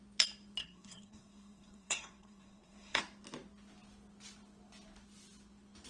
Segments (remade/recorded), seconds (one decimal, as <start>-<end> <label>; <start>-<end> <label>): 0.0-0.6 recorded; 0.6-3.0 remade; 3.0-5.9 recorded